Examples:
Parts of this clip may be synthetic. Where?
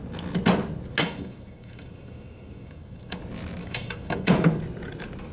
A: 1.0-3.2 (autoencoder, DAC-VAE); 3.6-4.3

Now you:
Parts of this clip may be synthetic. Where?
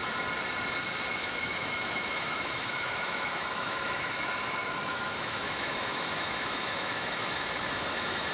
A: 1.1-8.3 (autoencoder, DAC-VAE)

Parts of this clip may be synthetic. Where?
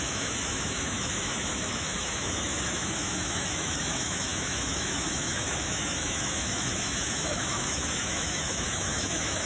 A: 0.0-9.5 (autoencoder, DAC-VAE)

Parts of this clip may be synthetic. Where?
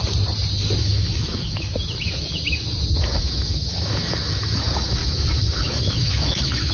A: 0.8-1.7 (autoencoder, DAC-VAE); 3.0-6.7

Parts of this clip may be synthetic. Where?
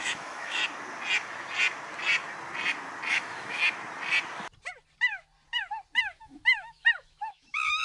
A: 0.0-0.6 (autoencoder, DAC-VAE); 3.1-3.6; 6.0-7.8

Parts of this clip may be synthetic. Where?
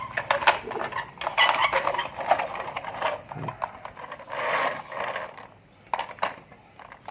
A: none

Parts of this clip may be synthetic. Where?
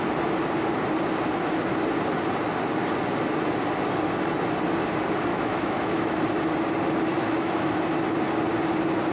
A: 5.3-6.2 (autoencoder, DAC-VAE); 7.1-7.8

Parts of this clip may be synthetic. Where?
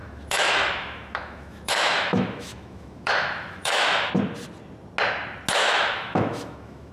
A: 0.0-4.1 (autoencoder, DAC-VAE); 5.6-6.9